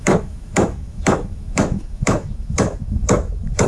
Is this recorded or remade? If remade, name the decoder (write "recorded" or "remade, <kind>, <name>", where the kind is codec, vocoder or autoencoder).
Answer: remade, autoencoder, DAC-VAE